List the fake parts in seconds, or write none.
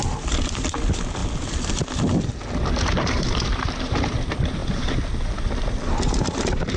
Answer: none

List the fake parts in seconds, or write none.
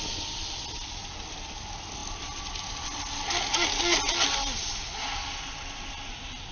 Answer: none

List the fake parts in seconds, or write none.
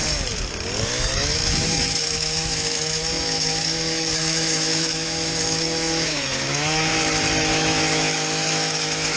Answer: 0.8-6.9 (autoencoder, DAC-VAE); 7.5-9.2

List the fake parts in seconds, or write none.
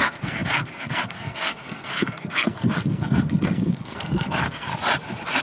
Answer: 0.0-4.7 (codec, SNAC)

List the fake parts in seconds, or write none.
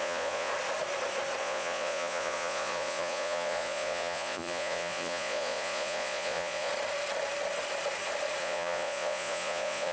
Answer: 0.0-0.5 (vocoder, Vocos); 1.4-6.7; 8.4-9.9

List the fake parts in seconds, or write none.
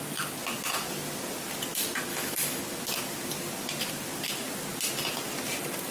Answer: 2.1-2.6 (autoencoder, DAC-VAE)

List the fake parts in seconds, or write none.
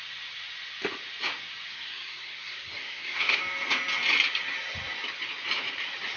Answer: 1.7-3.4 (codec, SNAC)